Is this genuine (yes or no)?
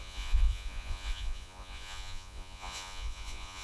no